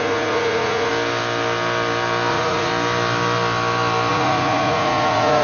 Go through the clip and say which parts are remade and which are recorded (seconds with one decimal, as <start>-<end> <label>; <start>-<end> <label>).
0.0-0.9 remade; 0.9-2.3 recorded; 2.3-2.7 remade; 2.7-4.1 recorded; 4.1-5.4 remade